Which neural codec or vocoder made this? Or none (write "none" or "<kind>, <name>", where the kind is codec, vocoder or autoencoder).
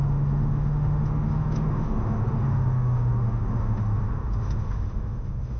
autoencoder, DAC-VAE